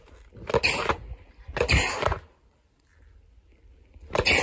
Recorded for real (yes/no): yes